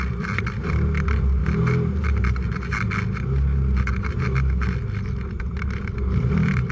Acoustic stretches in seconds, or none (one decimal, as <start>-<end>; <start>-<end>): 1.4-5.4